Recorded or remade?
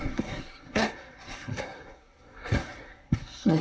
remade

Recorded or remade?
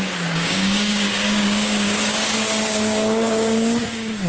remade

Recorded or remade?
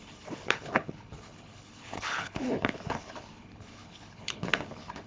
remade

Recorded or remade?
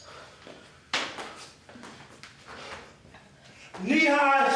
recorded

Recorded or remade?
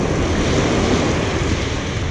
recorded